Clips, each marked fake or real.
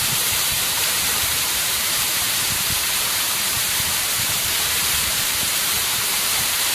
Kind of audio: fake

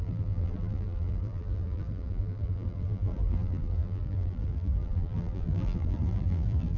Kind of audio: fake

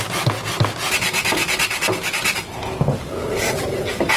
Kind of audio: real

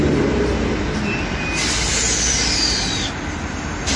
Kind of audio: real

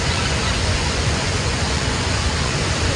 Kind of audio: fake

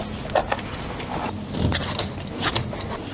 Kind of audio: real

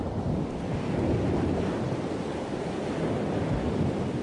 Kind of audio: real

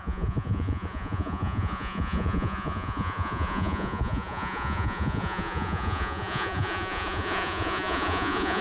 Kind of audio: fake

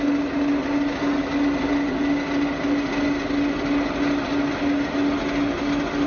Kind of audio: real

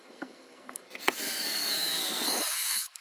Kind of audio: fake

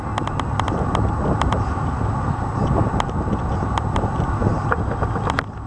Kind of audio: real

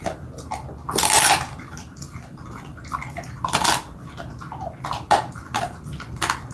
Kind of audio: real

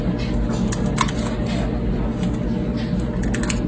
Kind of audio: real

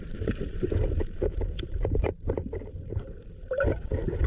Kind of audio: fake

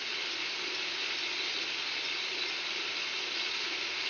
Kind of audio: real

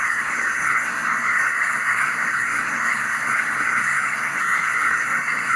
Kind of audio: fake